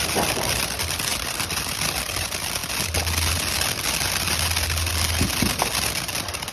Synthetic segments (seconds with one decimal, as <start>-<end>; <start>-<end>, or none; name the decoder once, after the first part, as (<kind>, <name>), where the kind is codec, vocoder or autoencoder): 1.1-1.7 (vocoder, BigVGAN v2)